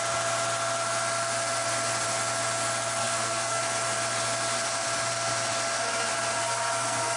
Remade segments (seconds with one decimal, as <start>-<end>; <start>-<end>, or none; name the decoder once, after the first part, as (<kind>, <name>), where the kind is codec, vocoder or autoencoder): 3.0-3.6 (codec, SNAC); 6.4-7.2